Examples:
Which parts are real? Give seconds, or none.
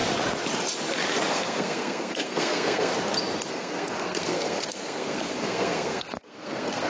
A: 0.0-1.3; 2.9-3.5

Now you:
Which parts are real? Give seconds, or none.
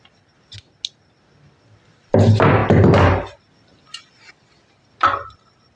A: 0.0-5.8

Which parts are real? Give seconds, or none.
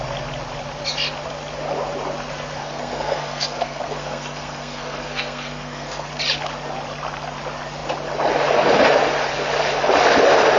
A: 0.0-2.6; 6.1-10.6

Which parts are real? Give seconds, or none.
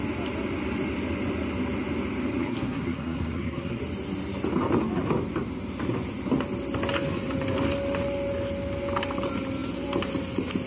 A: 0.0-2.4; 3.8-10.7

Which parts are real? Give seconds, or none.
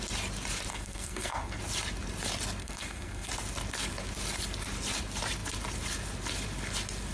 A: 0.0-0.7; 1.6-2.6; 3.3-7.1